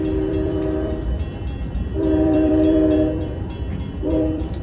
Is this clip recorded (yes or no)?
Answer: no